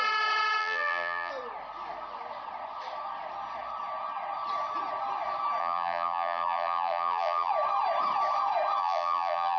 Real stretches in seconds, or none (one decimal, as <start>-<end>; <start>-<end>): 0.0-0.6; 1.3-5.6; 7.5-8.8